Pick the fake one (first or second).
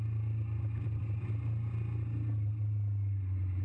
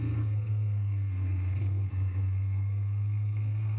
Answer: second